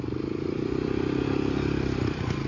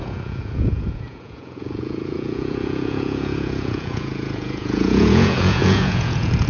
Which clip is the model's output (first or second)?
second